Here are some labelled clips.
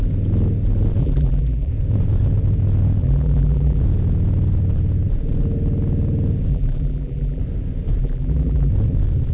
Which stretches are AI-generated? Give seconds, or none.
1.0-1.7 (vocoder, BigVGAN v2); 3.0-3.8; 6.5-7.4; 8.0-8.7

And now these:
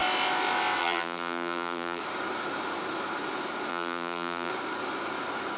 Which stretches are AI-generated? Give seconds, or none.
0.8-2.0 (vocoder, BigVGAN v2); 3.7-4.5

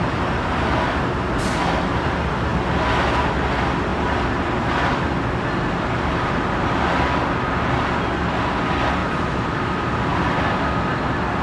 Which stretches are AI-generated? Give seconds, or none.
9.0-9.9 (vocoder, BigVGAN v2)

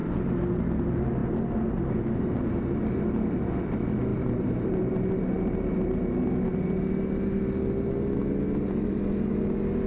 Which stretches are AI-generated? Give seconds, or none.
0.0-0.6 (vocoder, BigVGAN v2); 1.2-2.4; 4.1-5.1

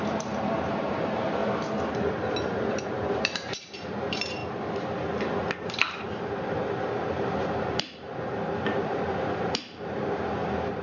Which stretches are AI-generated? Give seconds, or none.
0.0-1.4 (vocoder, BigVGAN v2); 2.4-4.4; 5.6-10.8

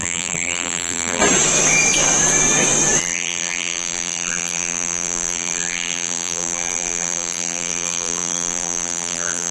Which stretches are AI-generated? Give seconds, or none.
0.0-1.2 (vocoder, BigVGAN v2); 3.0-9.5